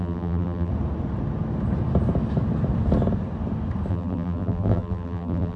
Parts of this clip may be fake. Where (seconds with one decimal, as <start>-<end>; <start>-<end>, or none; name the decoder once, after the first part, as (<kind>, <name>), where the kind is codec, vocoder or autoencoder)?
0.0-0.7 (vocoder, BigVGAN v2); 3.9-5.6